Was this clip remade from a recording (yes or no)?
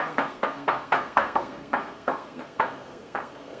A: yes